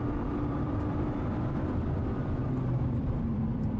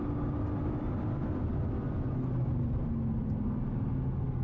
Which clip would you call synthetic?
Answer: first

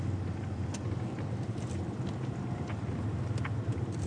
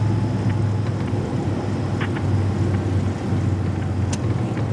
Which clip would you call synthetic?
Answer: first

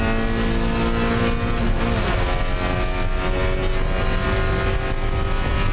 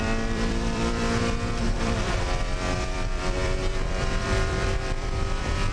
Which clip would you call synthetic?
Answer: second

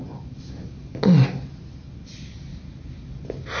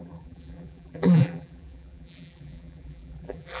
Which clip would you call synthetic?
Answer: second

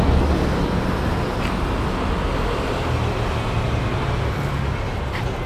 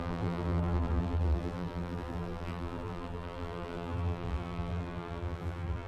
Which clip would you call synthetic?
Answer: second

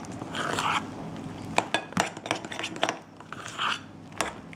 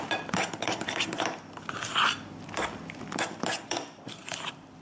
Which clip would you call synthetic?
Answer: second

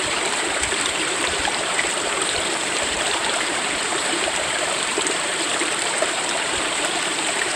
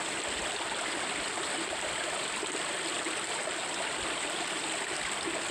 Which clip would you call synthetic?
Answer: first